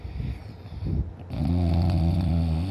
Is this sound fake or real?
real